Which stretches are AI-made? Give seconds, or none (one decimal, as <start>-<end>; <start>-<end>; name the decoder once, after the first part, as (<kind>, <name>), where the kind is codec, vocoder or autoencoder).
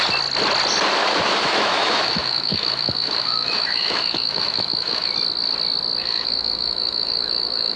1.0-5.1 (autoencoder, DAC-VAE); 6.0-7.8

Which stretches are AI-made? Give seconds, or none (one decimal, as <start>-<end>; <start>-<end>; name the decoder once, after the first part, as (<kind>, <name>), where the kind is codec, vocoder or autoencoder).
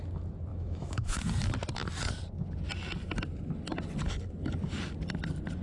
0.5-1.1 (autoencoder, DAC-VAE)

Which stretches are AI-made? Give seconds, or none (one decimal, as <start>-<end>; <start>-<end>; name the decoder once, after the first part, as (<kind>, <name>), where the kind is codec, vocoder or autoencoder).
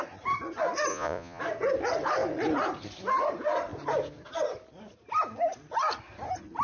0.9-1.4 (vocoder, Vocos)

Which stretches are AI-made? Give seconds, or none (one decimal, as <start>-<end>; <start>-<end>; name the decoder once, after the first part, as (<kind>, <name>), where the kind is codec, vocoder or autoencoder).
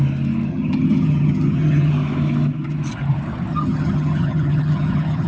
0.5-1.9 (vocoder, HiFi-GAN); 3.5-5.3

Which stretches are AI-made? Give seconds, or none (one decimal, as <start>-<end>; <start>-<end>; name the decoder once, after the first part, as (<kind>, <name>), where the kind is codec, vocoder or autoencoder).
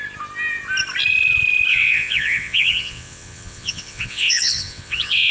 1.7-5.3 (vocoder, WaveNeXt)